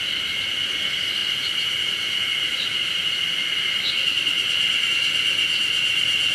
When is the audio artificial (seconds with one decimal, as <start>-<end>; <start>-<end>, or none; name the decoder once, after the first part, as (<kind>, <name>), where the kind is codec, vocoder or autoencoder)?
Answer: none